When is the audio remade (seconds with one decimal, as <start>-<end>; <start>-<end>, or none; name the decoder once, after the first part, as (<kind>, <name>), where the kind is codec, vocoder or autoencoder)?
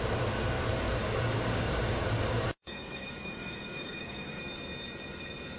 1.0-4.4 (codec, DAC)